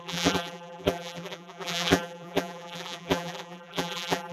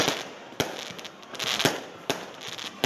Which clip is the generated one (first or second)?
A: first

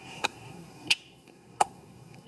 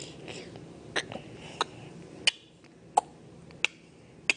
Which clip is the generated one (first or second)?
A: first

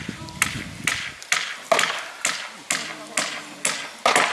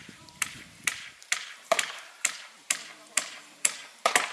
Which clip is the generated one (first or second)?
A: second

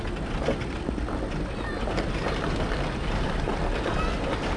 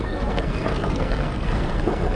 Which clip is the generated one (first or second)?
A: second